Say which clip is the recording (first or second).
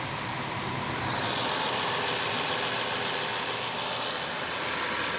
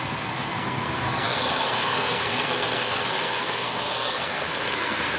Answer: first